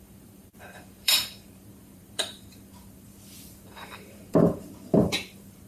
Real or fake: fake